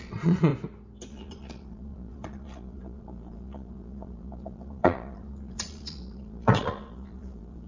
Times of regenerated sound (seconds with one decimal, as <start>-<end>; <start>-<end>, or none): 0.0-0.5; 1.1-7.7